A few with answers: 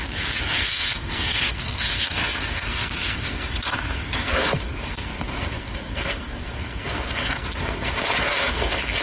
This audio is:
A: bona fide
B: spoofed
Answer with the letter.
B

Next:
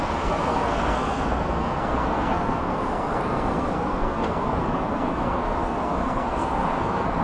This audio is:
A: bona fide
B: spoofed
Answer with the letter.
B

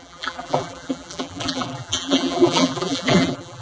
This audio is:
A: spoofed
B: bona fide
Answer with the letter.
A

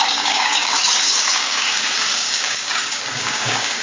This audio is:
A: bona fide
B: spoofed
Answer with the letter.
B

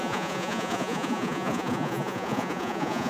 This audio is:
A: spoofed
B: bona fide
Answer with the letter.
A